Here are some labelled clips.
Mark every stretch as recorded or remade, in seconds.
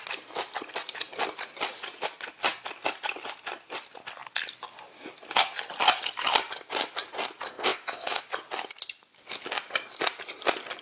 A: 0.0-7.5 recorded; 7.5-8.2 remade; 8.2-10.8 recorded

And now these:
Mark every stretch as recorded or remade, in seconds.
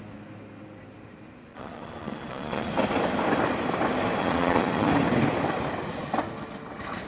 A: 0.0-1.5 recorded; 1.5-2.7 remade; 2.7-4.2 recorded; 4.2-4.9 remade; 4.9-7.1 recorded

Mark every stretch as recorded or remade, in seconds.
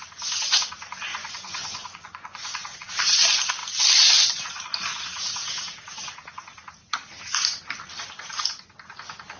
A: 0.0-1.1 recorded; 1.1-2.9 remade; 2.9-9.4 recorded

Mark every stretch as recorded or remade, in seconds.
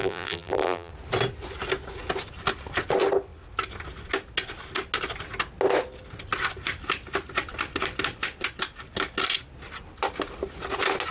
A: 0.0-0.9 remade; 0.9-11.1 recorded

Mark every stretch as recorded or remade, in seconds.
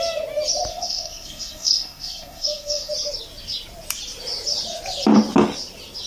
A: 0.0-0.7 recorded; 0.7-2.9 remade; 2.9-6.1 recorded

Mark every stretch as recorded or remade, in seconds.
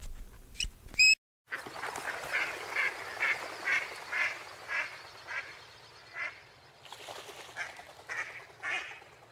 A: 0.0-9.3 recorded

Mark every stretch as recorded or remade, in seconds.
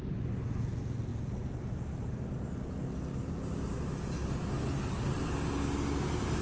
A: 0.0-6.4 recorded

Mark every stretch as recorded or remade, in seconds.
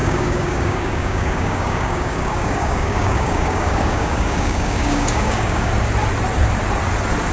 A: 0.0-5.7 remade; 5.7-7.3 recorded